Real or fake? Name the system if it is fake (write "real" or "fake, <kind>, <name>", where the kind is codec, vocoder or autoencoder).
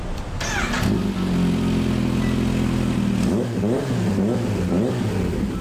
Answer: real